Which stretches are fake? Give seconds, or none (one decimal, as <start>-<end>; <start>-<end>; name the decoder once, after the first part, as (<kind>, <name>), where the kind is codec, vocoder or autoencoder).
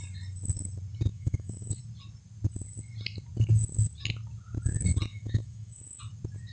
1.1-1.8 (autoencoder, DAC-VAE); 5.1-6.0